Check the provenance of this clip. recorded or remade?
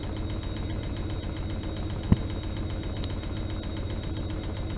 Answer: recorded